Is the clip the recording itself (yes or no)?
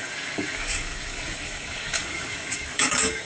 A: no